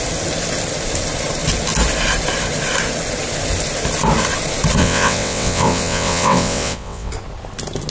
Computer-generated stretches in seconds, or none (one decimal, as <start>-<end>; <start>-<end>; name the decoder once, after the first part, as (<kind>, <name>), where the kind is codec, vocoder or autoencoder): 4.8-7.1 (vocoder, WaveNeXt)